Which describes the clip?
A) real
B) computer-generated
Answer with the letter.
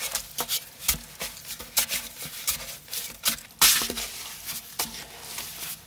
B